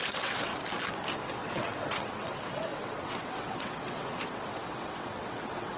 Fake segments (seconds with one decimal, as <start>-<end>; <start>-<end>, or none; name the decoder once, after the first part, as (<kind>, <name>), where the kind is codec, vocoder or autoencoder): 0.0-0.5 (vocoder, WaveNeXt); 1.3-5.8